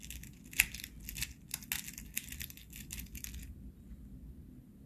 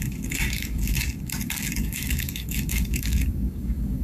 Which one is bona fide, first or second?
first